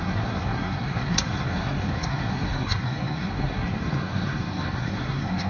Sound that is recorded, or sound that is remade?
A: remade